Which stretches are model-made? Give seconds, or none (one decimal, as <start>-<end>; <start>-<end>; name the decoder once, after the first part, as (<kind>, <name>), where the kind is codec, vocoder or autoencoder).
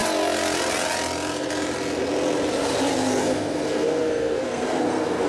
3.2-5.3 (codec, SNAC)